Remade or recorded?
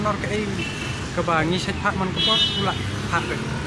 recorded